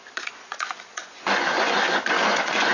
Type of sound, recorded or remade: remade